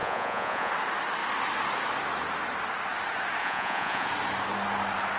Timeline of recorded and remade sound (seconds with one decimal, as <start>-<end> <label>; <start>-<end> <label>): 0.0-0.7 remade; 0.7-3.4 recorded; 3.4-4.1 remade; 4.1-5.2 recorded